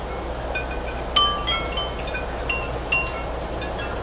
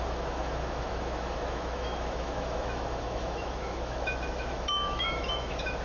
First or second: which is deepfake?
second